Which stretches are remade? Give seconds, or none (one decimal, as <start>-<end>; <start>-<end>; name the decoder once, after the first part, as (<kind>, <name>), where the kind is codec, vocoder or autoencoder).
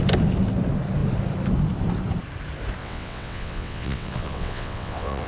2.8-5.3 (vocoder, WaveNeXt)